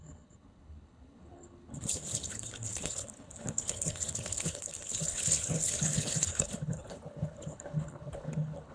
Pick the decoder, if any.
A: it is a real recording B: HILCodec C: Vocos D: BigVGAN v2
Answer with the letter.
B